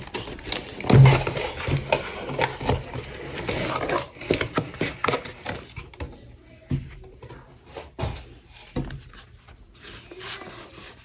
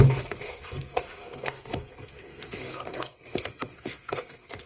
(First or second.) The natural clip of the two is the first